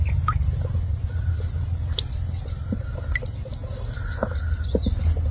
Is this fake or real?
real